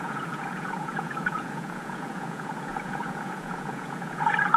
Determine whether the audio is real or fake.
fake